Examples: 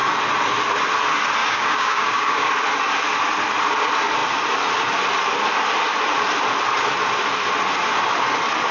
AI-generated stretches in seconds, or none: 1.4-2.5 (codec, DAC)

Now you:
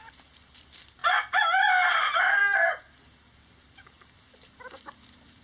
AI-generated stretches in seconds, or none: none

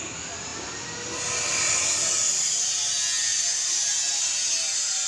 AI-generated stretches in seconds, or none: none

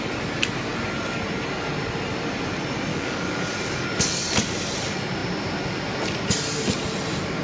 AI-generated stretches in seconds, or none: 2.9-4.2 (codec, DAC)

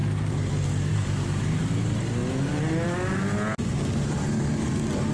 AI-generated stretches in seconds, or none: 0.0-0.5 (codec, DAC); 0.9-1.6